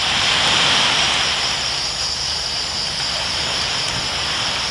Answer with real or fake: fake